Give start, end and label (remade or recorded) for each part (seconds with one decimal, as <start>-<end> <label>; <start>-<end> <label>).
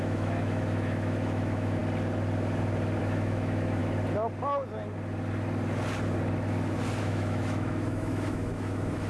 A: 0.0-1.8 remade; 1.8-3.0 recorded; 3.0-3.8 remade; 3.8-7.0 recorded; 7.0-9.1 remade